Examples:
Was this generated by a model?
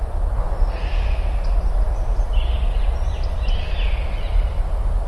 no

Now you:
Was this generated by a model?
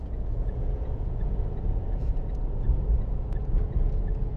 yes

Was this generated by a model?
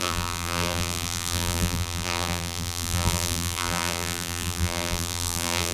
yes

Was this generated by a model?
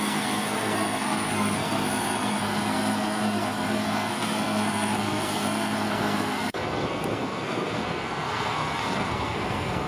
yes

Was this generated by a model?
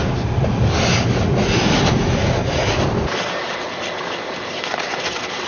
no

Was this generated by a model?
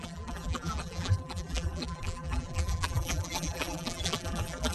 yes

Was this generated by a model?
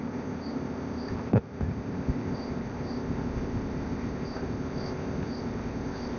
yes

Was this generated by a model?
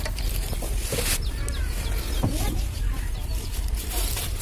no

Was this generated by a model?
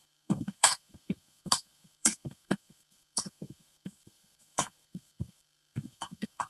yes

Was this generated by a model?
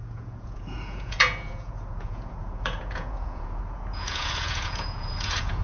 yes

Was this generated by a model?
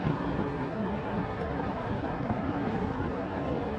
yes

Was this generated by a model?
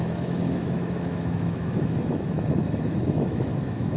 yes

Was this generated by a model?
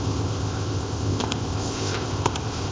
yes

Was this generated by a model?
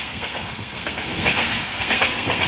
yes